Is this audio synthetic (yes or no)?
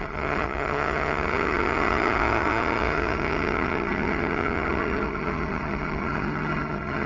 yes